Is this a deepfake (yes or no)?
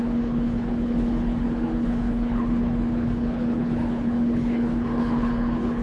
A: yes